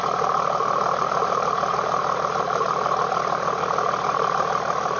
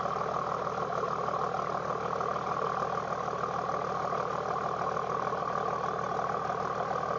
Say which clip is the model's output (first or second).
first